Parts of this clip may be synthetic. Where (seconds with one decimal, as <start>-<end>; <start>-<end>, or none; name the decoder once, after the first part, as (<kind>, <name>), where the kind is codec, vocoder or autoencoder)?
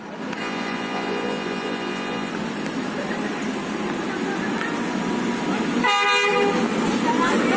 0.4-2.3 (vocoder, Vocos)